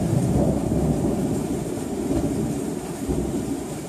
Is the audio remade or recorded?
remade